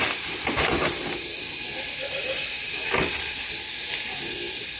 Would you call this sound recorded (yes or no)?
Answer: yes